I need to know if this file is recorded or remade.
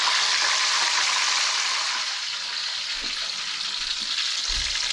recorded